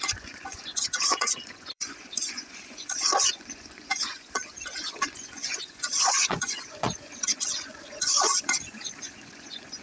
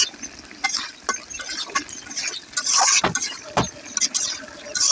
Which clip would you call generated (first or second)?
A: first